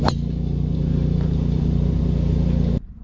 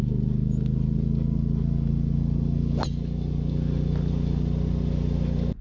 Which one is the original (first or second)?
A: second